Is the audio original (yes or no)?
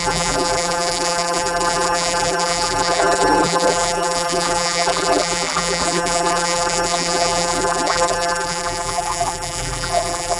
no